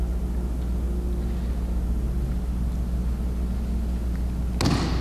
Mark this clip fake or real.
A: real